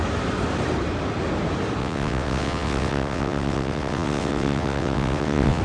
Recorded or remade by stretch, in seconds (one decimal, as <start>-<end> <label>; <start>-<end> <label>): 0.0-1.8 recorded; 1.8-5.6 remade